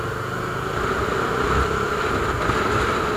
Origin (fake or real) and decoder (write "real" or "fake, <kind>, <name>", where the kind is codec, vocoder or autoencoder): real